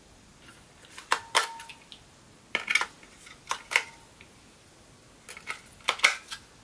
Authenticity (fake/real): real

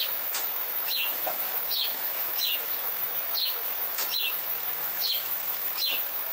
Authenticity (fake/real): fake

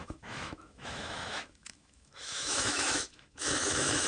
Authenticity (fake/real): fake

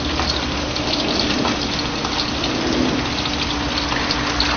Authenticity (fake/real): real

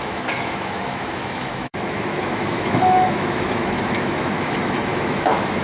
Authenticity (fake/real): fake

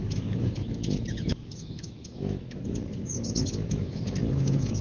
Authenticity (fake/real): fake